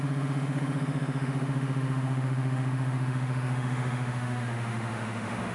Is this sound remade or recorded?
remade